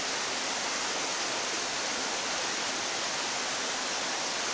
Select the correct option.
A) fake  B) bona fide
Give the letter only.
B